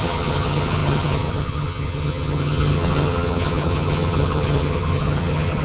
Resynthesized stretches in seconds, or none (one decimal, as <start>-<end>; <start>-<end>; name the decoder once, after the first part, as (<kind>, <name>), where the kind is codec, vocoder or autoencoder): 0.0-5.6 (vocoder, HiFi-GAN)